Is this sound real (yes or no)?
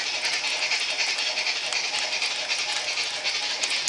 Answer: yes